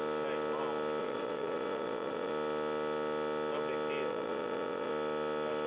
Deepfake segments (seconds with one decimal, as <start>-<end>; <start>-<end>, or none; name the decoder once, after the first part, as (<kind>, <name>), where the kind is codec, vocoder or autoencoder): 1.0-2.3 (vocoder, Vocos); 4.1-4.9

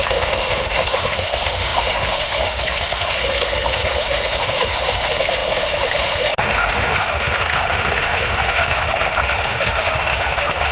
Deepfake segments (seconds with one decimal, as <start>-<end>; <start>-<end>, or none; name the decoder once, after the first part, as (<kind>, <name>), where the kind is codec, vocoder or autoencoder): 0.0-10.7 (autoencoder, DAC-VAE)